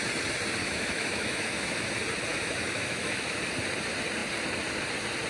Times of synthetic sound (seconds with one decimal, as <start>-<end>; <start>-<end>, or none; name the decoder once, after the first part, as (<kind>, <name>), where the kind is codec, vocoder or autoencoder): 0.6-1.9 (autoencoder, DAC-VAE); 2.3-3.4